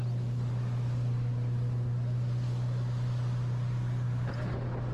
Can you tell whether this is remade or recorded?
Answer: recorded